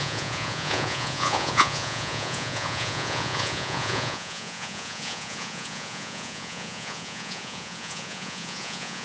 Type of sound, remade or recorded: remade